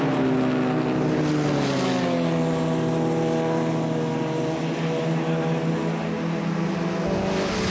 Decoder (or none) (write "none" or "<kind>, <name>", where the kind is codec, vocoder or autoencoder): none